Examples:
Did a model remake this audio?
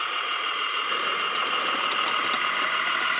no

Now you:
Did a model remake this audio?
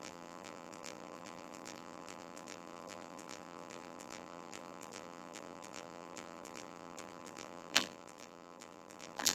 yes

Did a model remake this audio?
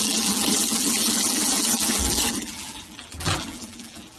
yes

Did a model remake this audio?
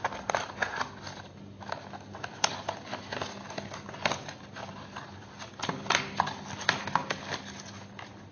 no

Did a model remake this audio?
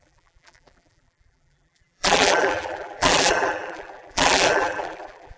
yes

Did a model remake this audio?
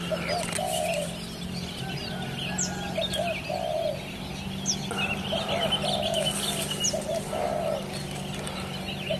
no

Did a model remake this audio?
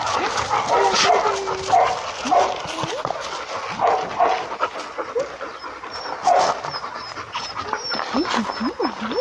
no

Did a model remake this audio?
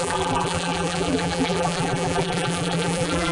yes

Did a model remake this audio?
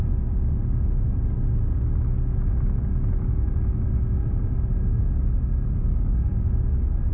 no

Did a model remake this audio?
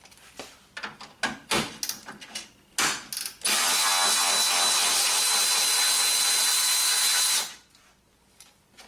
no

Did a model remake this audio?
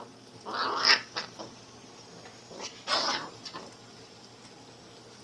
no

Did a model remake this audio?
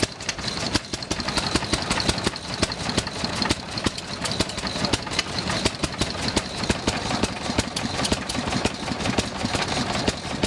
no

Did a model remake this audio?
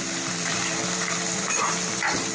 yes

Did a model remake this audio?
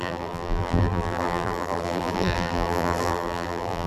yes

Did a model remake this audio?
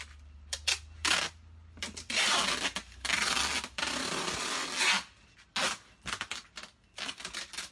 no